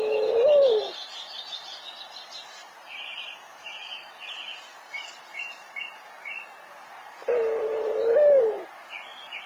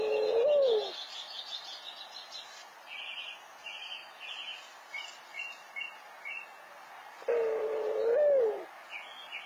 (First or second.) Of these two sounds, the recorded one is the second